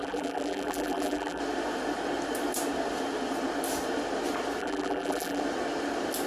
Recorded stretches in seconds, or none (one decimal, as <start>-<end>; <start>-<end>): 1.4-4.6; 5.4-6.3